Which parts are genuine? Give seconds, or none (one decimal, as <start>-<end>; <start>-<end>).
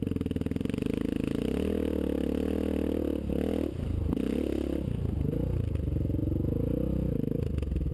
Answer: 0.0-7.9